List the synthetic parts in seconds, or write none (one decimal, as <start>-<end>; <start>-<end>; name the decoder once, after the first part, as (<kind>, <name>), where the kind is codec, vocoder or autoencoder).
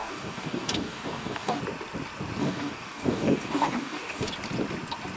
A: 0.0-1.6 (codec, DAC); 2.4-4.3